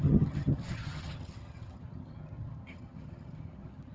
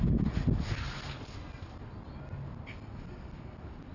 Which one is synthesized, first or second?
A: first